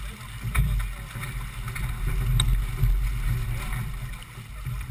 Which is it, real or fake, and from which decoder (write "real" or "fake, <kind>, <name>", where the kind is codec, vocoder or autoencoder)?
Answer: real